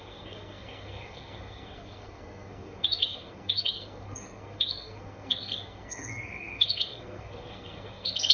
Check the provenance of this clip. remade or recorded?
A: remade